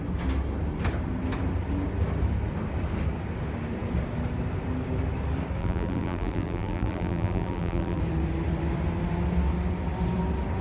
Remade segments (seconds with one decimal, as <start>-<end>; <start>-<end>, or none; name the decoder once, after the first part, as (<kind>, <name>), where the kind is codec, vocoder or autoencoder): 5.6-8.0 (vocoder, BigVGAN v2)

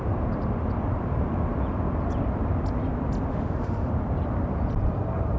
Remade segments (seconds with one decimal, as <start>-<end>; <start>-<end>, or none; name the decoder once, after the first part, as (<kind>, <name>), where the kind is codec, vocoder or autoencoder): 3.3-3.9 (autoencoder, DAC-VAE)

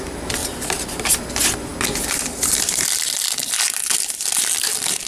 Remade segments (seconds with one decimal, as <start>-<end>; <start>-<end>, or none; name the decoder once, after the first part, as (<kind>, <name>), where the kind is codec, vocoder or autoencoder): 0.4-1.2 (vocoder, BigVGAN v2)

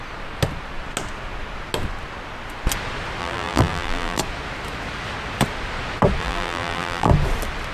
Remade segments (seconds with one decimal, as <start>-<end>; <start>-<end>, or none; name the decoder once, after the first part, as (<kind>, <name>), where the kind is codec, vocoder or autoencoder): 3.2-4.2 (vocoder, BigVGAN v2); 6.2-7.1

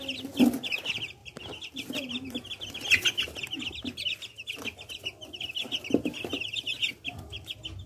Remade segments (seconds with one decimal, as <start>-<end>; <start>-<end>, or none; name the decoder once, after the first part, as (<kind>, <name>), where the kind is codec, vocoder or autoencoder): none